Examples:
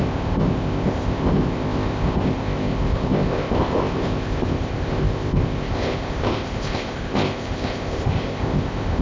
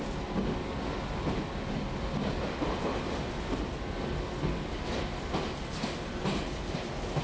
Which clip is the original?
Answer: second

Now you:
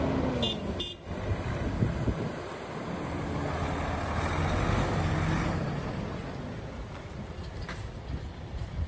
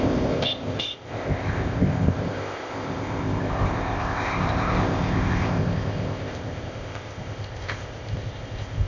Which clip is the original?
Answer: first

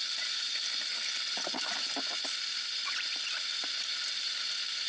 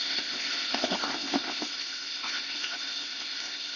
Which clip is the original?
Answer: first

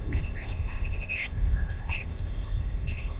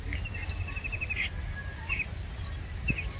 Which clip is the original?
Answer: second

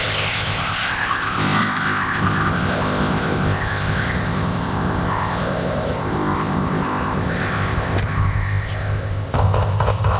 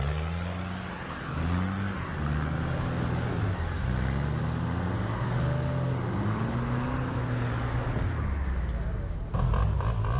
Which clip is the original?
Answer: second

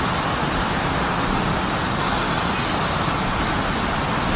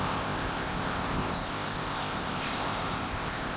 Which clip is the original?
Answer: first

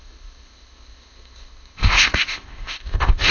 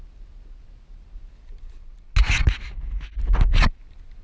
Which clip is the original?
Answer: second